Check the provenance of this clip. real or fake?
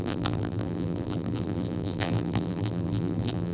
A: fake